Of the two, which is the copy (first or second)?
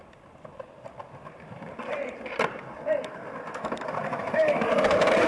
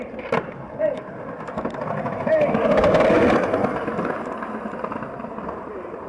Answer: first